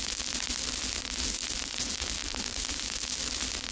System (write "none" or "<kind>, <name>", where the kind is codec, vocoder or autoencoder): none